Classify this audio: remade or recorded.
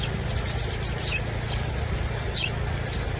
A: recorded